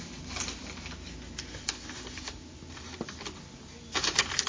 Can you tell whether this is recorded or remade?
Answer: recorded